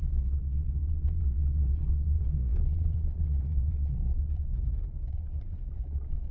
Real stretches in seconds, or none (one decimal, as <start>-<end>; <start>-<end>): 4.5-5.1